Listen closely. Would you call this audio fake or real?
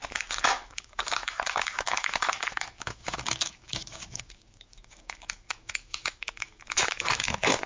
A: fake